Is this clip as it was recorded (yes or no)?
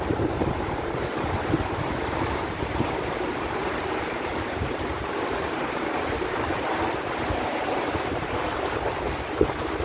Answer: no